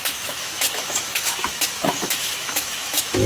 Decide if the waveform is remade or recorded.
remade